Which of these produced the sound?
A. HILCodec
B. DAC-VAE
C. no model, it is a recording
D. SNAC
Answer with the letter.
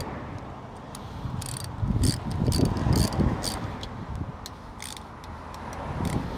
C